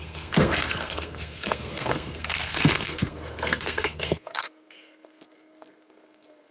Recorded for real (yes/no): no